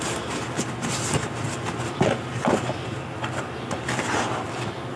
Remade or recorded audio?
recorded